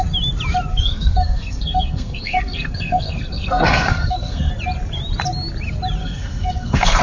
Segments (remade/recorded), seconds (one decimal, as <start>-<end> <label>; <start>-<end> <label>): 0.0-0.7 recorded; 0.7-4.5 remade; 4.5-6.0 recorded; 6.0-7.0 remade